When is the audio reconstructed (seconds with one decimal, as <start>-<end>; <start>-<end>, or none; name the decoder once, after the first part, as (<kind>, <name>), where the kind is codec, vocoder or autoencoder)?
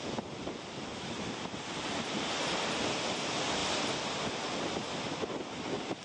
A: 0.0-3.6 (vocoder, BigVGAN v2); 5.5-6.0